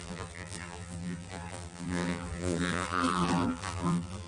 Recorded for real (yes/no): no